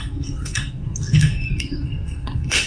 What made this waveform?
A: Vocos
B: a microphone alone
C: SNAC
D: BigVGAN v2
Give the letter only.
C